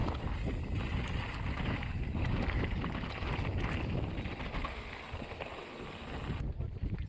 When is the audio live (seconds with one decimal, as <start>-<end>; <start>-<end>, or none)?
0.0-7.1